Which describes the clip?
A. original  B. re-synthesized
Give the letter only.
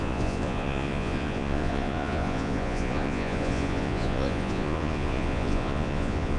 B